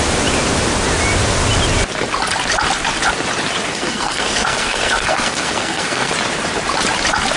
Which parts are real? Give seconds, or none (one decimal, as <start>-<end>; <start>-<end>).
0.0-3.7; 6.1-7.4